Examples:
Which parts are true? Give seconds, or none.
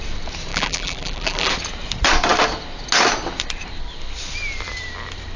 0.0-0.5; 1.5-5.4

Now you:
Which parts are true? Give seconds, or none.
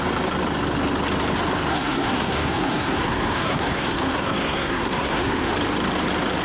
0.0-1.7; 5.5-6.4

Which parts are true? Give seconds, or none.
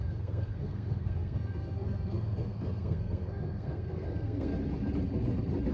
4.5-5.7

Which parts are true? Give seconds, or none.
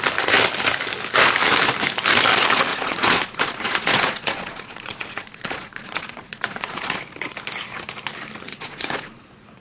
0.0-2.7; 7.0-8.5; 9.2-9.6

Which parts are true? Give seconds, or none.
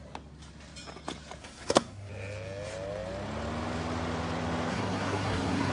0.0-1.4; 2.1-4.7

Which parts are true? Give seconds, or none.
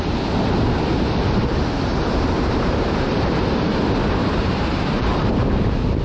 0.0-1.9; 5.5-6.0